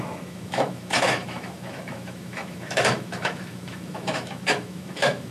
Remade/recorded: remade